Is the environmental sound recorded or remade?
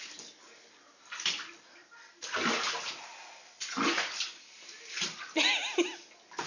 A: recorded